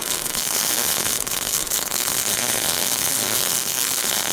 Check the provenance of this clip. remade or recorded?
remade